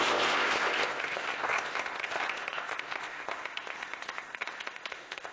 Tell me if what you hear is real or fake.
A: fake